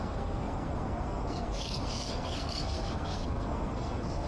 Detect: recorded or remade remade